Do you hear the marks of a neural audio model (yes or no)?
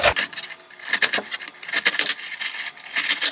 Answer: no